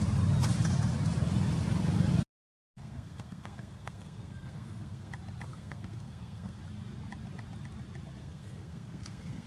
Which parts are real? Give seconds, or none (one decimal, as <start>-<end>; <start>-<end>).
0.0-2.5; 5.1-5.5; 6.6-8.2